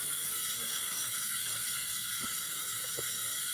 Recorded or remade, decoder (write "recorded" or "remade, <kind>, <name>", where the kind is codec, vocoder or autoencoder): remade, codec, SNAC